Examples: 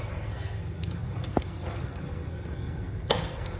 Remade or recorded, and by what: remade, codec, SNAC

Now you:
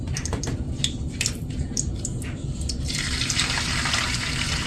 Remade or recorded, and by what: remade, vocoder, BigVGAN v2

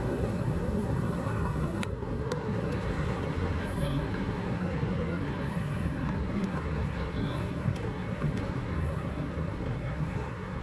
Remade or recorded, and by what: remade, codec, SNAC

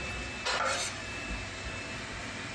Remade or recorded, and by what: recorded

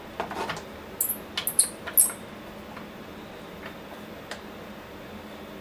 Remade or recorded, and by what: recorded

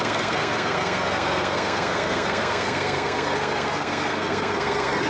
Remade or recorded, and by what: remade, codec, SNAC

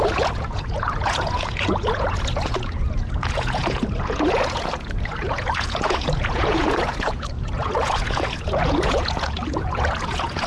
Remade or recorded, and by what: remade, vocoder, Vocos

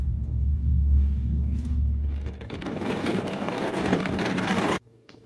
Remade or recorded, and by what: remade, codec, DAC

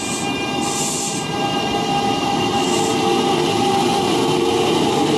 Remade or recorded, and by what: recorded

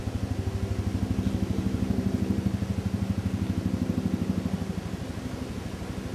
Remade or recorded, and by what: recorded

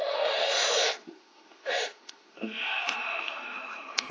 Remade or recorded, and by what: remade, autoencoder, DAC-VAE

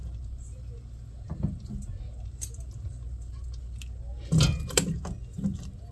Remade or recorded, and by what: recorded